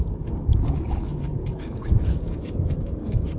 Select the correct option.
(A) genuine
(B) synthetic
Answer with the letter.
B